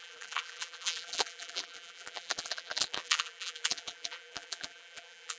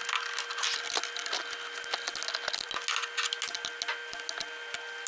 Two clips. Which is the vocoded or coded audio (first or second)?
first